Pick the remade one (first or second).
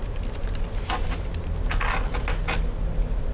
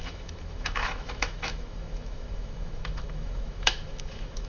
second